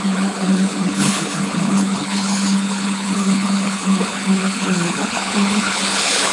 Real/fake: fake